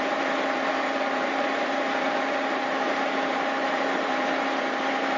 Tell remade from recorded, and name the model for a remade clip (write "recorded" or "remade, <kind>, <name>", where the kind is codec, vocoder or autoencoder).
remade, vocoder, BigVGAN v2